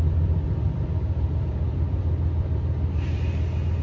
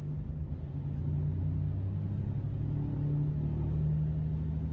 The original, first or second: second